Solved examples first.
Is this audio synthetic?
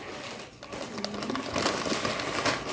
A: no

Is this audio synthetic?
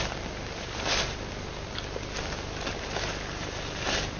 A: no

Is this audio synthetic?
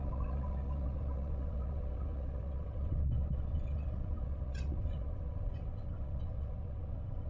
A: yes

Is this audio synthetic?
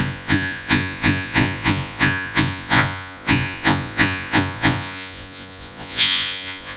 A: yes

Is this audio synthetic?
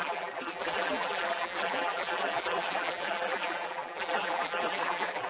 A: yes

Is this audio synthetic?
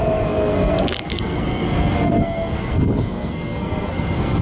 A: yes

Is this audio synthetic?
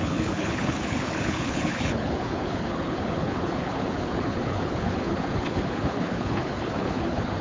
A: yes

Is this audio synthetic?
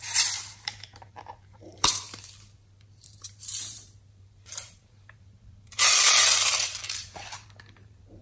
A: yes